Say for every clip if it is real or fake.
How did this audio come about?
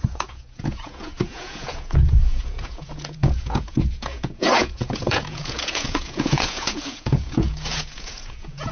fake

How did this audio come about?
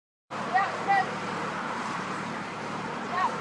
fake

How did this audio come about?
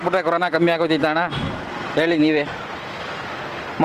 real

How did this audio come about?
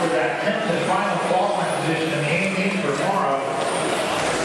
real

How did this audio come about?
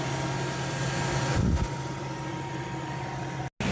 real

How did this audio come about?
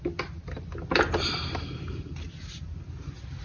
real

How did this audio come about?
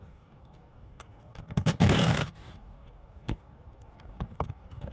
fake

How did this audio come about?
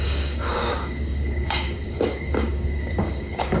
fake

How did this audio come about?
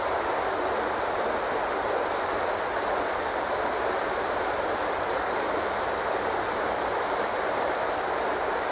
real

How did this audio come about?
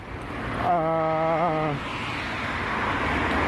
real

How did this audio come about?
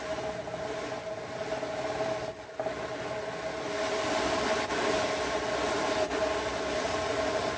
real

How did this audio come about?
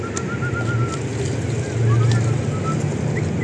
real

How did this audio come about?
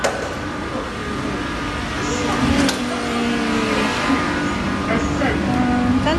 real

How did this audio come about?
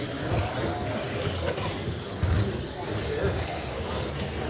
real